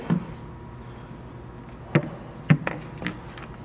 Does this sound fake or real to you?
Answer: real